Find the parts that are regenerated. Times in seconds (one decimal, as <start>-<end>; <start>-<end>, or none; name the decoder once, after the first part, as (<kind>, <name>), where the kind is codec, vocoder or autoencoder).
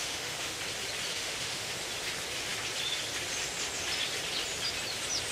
0.0-0.6 (autoencoder, DAC-VAE); 1.1-1.7